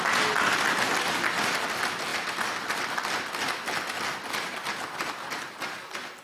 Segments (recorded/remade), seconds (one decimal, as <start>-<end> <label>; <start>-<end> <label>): 0.0-6.2 recorded